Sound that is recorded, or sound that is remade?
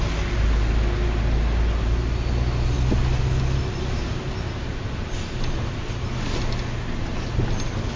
recorded